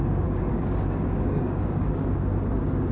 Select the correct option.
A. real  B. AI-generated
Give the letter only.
B